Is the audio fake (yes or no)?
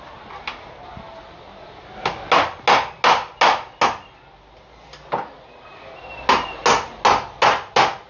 no